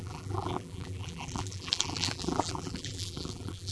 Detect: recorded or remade remade